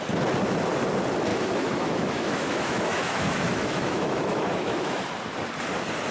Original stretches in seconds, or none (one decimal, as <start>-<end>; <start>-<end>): 0.0-1.3; 5.0-6.1